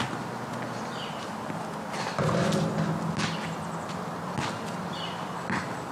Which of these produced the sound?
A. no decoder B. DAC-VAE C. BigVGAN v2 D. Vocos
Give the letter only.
A